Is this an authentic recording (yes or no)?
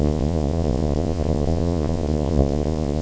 no